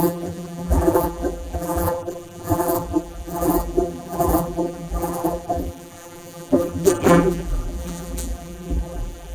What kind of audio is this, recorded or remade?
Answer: remade